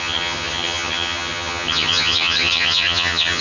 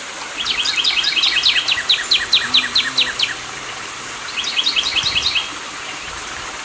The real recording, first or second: second